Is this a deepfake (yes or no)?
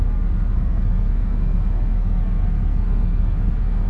yes